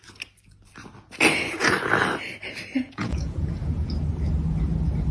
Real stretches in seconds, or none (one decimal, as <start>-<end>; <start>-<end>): 0.0-2.8; 3.9-5.1